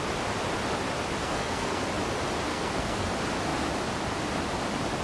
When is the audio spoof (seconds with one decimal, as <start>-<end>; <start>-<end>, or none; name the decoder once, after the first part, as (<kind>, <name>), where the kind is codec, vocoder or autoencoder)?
1.2-1.8 (codec, SNAC); 2.5-3.1